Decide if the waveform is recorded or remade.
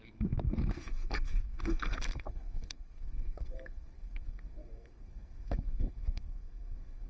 remade